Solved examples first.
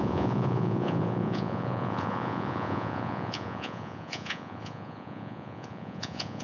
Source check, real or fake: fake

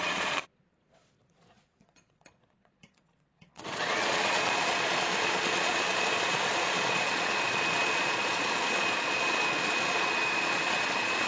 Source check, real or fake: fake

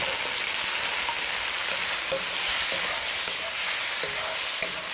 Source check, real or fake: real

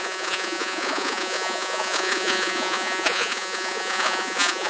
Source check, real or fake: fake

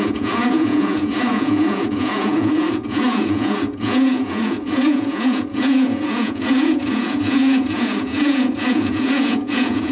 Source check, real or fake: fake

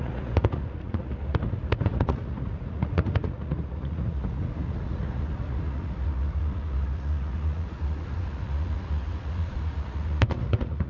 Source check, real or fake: fake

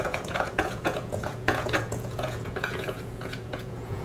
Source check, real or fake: fake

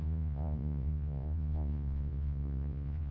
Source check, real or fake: fake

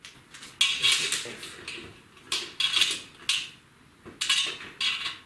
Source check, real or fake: real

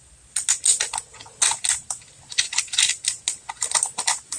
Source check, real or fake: real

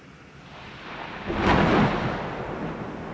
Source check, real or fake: real